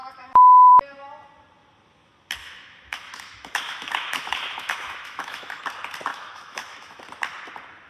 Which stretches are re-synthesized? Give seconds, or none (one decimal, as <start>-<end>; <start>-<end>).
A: 0.0-0.7; 2.4-5.6; 6.1-7.0